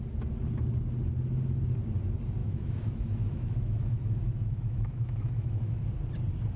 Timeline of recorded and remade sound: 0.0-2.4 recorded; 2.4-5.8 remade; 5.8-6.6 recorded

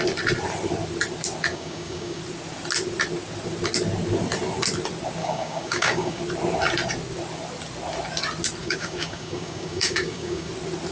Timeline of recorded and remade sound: 0.0-1.5 recorded; 1.5-2.2 remade; 2.2-5.2 recorded; 5.2-6.2 remade; 6.2-8.6 recorded; 8.6-10.5 remade; 10.5-10.9 recorded

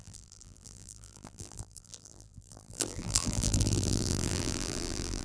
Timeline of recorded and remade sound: 0.0-5.2 remade

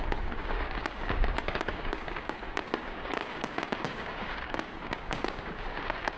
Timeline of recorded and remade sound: 0.0-6.2 remade